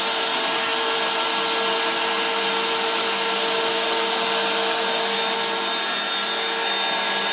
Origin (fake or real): real